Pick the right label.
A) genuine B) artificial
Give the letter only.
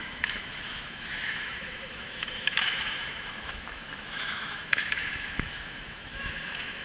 B